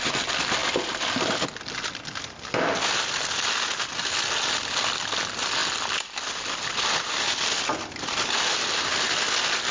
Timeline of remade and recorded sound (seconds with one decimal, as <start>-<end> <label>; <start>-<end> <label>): 0.0-9.7 recorded